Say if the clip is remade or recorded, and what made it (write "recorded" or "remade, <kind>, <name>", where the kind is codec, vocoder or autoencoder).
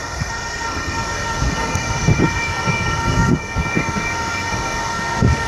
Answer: remade, codec, SNAC